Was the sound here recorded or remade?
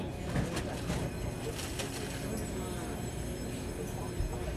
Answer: recorded